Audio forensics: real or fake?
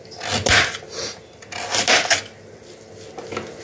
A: real